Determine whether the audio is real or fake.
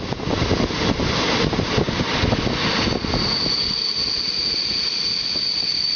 real